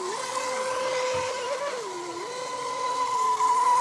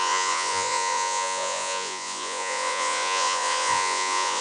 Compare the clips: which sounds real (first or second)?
first